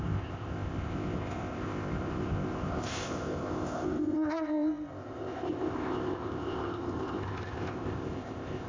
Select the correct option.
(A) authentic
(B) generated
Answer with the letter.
B